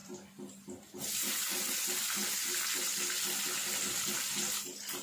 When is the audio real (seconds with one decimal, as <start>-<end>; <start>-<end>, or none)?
0.0-5.0